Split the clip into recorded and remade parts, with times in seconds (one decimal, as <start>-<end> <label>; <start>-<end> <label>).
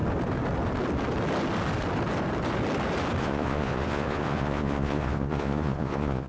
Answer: 0.0-3.2 recorded; 3.2-6.3 remade